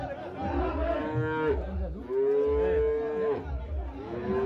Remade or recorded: recorded